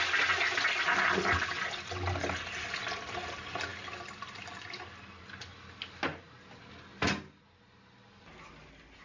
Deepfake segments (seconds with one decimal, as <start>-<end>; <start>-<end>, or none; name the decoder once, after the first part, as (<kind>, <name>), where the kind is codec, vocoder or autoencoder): none